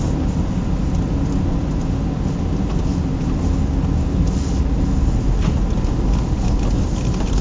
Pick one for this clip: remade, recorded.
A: recorded